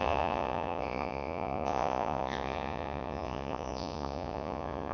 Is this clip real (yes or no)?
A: no